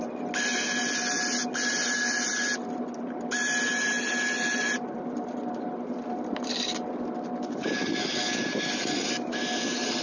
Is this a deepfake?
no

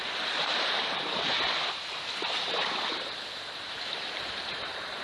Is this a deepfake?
yes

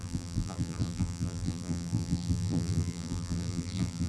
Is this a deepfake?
yes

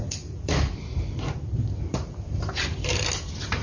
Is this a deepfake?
yes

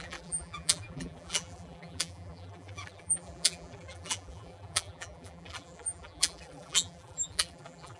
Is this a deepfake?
yes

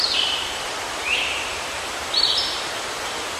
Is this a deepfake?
yes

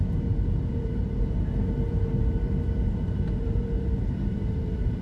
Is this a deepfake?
yes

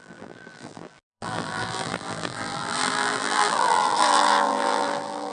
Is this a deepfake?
yes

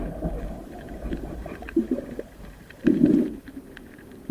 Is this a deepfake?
yes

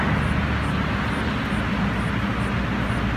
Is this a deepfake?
no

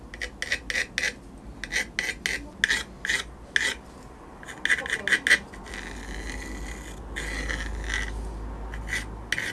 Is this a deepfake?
no